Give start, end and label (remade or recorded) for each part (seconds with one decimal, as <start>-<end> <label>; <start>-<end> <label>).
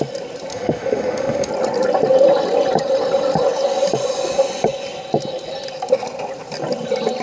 0.0-0.5 recorded; 0.5-1.5 remade; 1.5-7.2 recorded